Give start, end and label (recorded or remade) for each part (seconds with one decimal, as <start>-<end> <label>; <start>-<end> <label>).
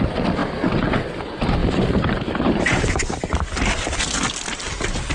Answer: 0.0-1.6 recorded; 1.6-2.8 remade; 2.8-5.1 recorded